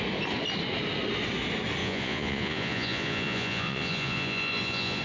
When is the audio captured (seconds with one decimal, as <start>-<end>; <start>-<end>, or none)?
0.0-1.8